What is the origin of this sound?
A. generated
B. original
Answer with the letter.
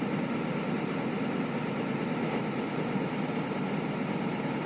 B